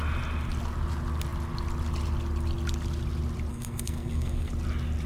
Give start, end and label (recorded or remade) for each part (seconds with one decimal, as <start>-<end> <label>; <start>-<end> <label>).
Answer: 0.0-3.5 recorded; 3.5-4.5 remade; 4.5-5.1 recorded